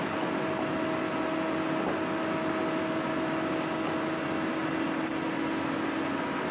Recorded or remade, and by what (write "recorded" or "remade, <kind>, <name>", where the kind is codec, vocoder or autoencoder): recorded